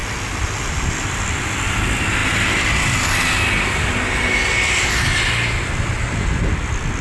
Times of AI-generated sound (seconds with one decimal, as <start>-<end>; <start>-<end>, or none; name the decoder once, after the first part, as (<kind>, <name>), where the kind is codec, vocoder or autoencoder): none